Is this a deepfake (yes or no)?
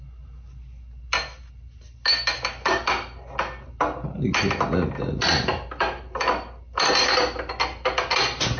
no